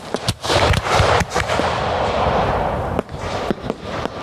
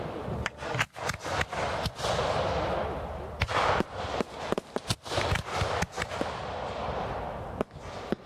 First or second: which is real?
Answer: second